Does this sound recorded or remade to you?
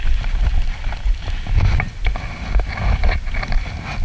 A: recorded